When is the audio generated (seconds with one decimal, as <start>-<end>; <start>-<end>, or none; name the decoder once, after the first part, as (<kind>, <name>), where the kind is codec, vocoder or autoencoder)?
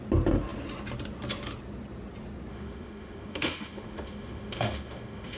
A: 2.5-5.4 (autoencoder, DAC-VAE)